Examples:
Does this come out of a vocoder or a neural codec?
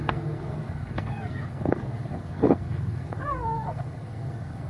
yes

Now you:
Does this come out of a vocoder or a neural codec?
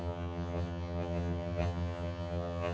yes